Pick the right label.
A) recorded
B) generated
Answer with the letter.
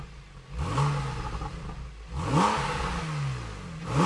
A